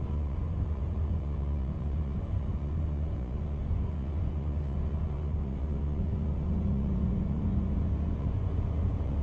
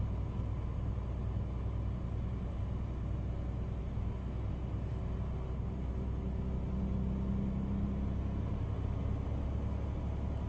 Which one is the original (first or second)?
second